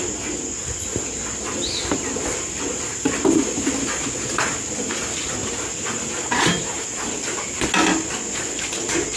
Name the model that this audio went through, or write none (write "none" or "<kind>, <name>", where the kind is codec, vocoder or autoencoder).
none